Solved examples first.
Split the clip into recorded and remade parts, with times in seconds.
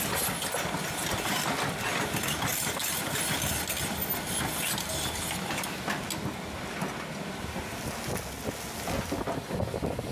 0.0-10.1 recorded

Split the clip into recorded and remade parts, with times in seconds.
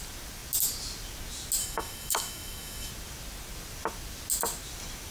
0.0-1.6 recorded; 1.6-2.9 remade; 2.9-5.1 recorded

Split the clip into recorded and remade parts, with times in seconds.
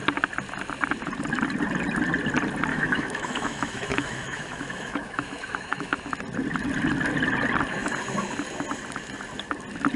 0.0-2.7 recorded; 2.7-6.0 remade; 6.0-10.0 recorded